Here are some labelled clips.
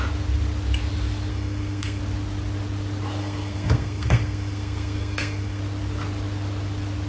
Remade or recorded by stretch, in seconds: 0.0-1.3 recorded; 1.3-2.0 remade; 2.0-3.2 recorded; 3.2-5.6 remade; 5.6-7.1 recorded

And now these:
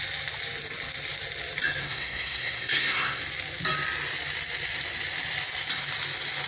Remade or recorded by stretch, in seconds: 0.0-1.8 recorded; 1.8-3.2 remade; 3.2-6.5 recorded

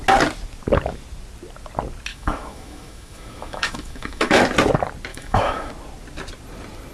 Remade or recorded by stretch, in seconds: 0.0-2.1 recorded; 2.1-4.4 remade; 4.4-5.1 recorded; 5.1-5.7 remade; 5.7-6.9 recorded